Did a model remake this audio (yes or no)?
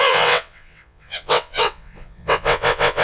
yes